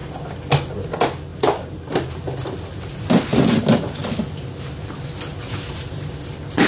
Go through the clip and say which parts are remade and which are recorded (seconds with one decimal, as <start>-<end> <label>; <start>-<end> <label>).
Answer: 0.0-6.7 recorded